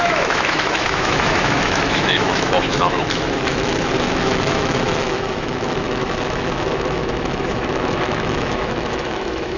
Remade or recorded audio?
remade